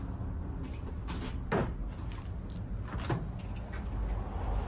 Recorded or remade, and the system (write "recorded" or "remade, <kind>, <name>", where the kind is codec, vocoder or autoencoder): recorded